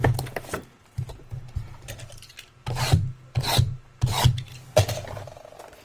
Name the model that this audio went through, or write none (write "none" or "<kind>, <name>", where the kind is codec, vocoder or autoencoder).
none